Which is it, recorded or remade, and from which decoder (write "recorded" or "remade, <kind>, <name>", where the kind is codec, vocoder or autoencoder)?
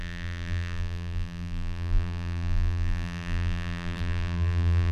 remade, vocoder, BigVGAN v2